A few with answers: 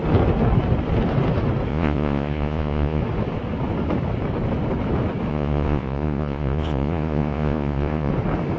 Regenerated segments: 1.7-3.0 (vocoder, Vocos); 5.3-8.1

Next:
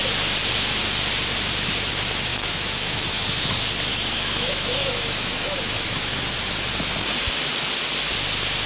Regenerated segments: 2.3-3.5 (autoencoder, DAC-VAE); 3.9-6.2

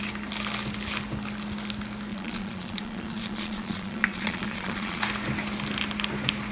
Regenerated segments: 2.1-5.0 (vocoder, Vocos)

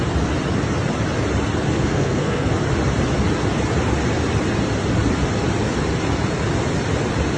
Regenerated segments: 1.7-2.5 (codec, SNAC)

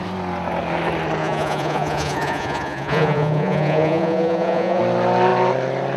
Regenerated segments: 1.2-4.8 (vocoder, Vocos)

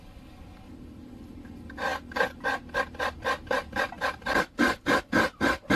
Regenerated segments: none

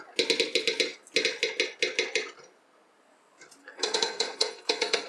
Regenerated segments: 3.6-5.1 (codec, SNAC)

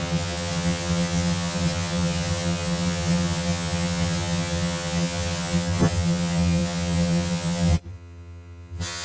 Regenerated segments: 0.0-9.0 (vocoder, HiFi-GAN)